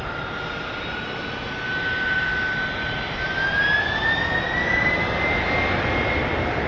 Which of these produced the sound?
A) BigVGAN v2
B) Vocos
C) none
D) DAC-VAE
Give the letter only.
C